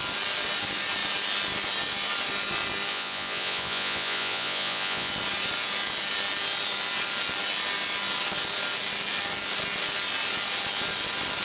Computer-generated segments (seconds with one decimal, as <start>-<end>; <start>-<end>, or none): 2.9-5.1